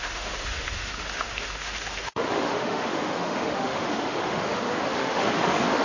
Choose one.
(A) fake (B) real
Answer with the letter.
A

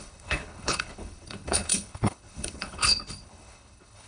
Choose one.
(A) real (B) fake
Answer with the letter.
B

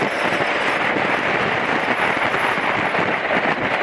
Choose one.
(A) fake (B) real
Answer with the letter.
B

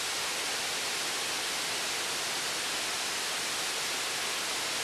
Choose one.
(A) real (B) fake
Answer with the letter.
A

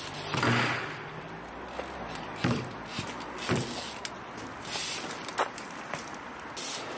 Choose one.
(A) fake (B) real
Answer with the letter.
B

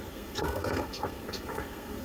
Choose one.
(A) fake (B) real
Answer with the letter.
A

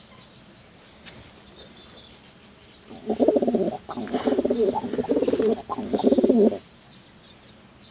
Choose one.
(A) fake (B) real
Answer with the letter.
B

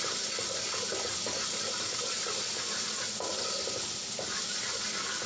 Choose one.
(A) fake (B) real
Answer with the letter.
B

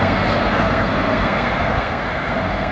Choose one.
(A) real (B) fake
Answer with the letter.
B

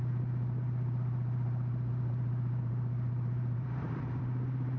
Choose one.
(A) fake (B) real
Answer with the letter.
A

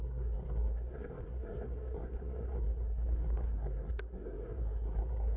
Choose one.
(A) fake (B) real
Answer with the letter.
A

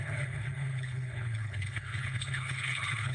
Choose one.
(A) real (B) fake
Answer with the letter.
B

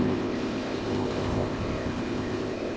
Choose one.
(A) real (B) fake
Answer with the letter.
B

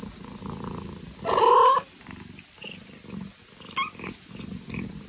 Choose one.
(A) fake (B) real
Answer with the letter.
B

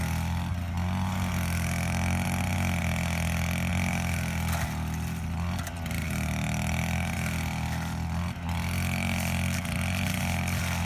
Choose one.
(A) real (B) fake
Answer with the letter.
A